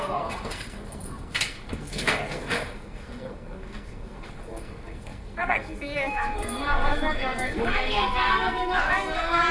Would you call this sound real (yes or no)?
no